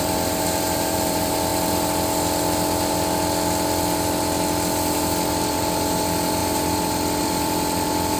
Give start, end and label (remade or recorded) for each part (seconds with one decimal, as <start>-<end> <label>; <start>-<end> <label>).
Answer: 0.0-1.5 remade; 1.5-5.3 recorded; 5.3-6.4 remade; 6.4-7.2 recorded; 7.2-8.2 remade